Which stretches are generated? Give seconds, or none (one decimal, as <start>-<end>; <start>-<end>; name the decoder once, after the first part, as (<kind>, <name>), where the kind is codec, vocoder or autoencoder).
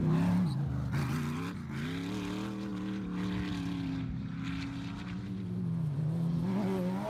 none